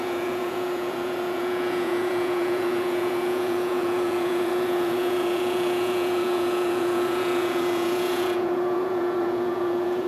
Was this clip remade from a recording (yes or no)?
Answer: yes